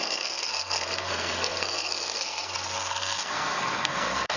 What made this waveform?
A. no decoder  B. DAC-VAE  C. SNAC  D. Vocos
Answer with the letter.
C